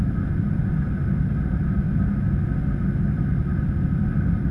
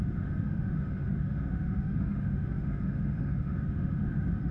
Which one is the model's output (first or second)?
second